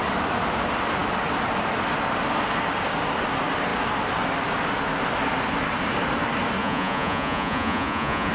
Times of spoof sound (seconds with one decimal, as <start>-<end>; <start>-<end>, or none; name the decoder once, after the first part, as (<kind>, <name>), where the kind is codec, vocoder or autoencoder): 6.6-8.3 (vocoder, Vocos)